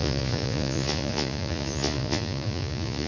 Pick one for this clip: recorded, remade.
remade